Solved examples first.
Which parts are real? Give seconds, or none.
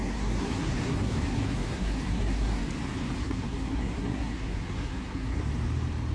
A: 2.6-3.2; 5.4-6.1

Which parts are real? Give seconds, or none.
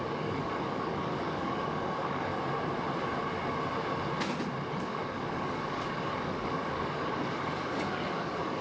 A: 2.3-4.7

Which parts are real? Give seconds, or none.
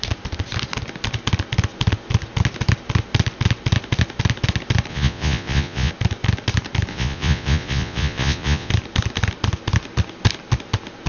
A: 0.0-4.9; 5.9-6.9; 8.7-11.1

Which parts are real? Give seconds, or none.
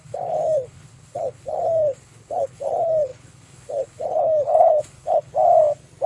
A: 5.3-6.1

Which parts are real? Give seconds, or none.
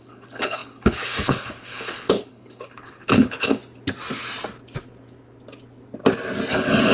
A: 3.6-6.5